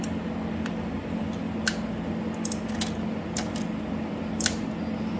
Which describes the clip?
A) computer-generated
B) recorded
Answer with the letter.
B